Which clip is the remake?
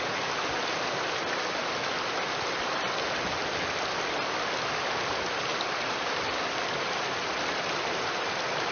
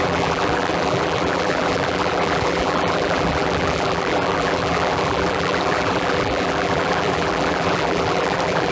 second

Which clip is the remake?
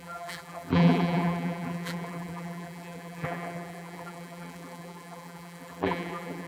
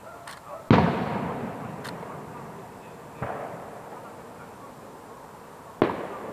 first